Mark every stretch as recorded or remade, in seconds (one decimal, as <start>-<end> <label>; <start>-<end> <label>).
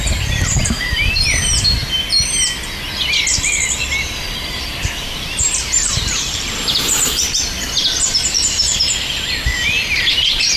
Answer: 0.0-1.8 remade; 1.8-4.4 recorded; 4.4-8.7 remade; 8.7-10.1 recorded; 10.1-10.6 remade